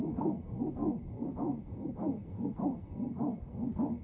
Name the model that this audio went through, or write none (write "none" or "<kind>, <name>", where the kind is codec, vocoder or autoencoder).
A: codec, SNAC